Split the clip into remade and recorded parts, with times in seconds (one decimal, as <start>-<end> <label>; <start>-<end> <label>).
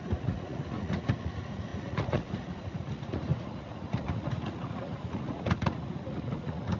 0.0-6.8 remade